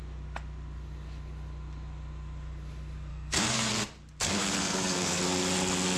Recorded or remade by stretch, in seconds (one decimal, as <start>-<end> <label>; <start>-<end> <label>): 0.0-3.1 recorded; 3.1-3.7 remade; 3.7-4.4 recorded; 4.4-5.2 remade; 5.2-6.0 recorded